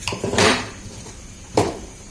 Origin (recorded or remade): remade